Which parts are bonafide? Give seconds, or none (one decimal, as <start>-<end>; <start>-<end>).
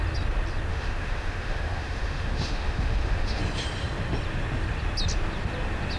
0.0-0.7; 3.4-6.0